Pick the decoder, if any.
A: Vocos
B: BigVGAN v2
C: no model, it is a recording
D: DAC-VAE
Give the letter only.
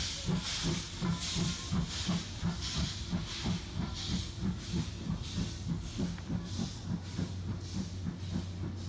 C